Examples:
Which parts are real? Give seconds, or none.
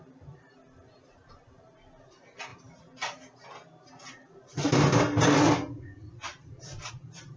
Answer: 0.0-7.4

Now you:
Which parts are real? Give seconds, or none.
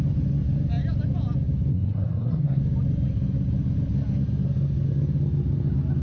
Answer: 0.0-1.7; 2.6-6.0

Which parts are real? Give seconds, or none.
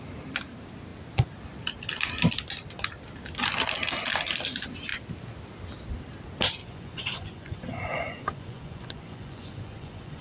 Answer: 0.0-6.6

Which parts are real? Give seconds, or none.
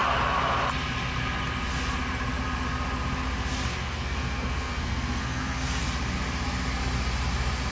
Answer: 0.0-3.8; 5.8-7.7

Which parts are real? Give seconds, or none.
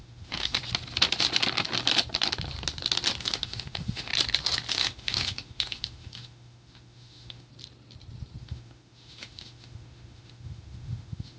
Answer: 0.6-3.2; 4.1-4.7; 7.5-8.4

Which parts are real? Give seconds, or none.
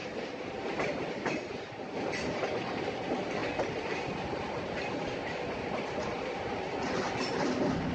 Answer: 2.8-7.9